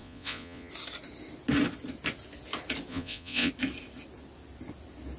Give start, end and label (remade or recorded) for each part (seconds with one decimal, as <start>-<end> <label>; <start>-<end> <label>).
0.0-0.7 remade; 0.7-2.9 recorded; 2.9-3.5 remade; 3.5-5.2 recorded